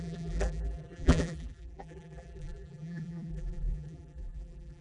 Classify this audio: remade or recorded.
remade